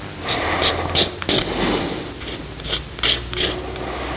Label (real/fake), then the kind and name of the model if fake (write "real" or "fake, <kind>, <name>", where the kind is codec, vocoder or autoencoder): real